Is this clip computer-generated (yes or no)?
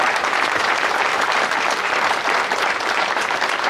yes